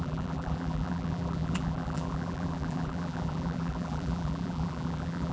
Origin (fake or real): fake